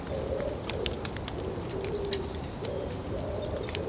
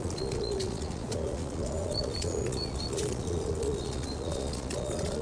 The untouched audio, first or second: first